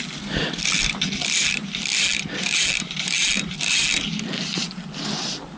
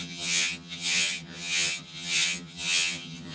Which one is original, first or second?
first